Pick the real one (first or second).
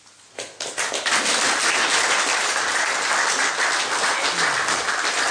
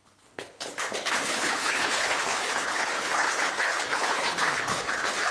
first